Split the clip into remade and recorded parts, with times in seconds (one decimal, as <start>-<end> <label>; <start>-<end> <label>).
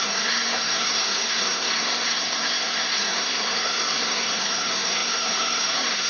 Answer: 0.0-6.1 remade